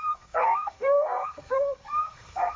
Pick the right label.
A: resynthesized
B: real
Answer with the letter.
A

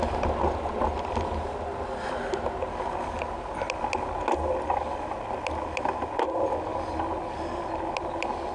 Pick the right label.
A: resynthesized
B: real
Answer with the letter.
B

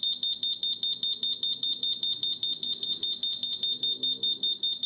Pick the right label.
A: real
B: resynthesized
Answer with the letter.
A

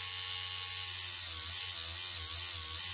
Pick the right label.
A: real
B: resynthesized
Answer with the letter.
A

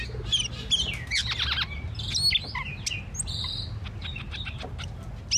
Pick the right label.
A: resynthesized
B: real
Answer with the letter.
B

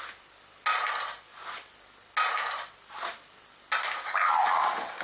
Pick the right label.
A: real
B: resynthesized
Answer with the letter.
A